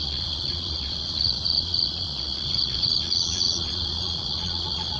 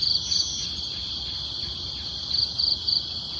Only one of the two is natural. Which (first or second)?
second